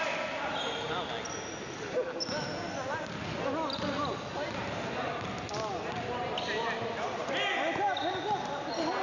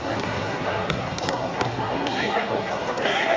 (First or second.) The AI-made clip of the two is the second